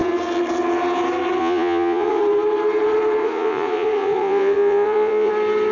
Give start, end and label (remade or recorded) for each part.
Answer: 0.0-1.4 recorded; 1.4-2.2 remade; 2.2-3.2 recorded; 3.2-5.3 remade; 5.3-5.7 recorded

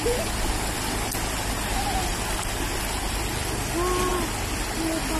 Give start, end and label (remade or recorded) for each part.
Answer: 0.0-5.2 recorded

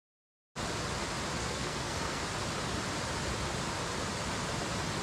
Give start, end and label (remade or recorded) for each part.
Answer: 0.0-1.4 recorded; 1.4-2.2 remade; 2.2-5.0 recorded

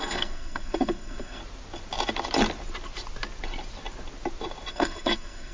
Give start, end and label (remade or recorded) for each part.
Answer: 0.0-1.4 remade; 1.4-4.7 recorded; 4.7-5.5 remade